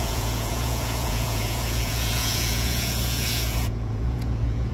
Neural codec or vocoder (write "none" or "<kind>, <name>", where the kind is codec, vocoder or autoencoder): vocoder, Vocos